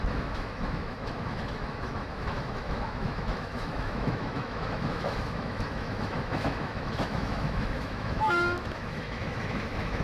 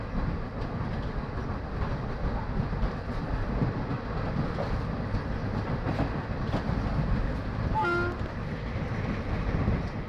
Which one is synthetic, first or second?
first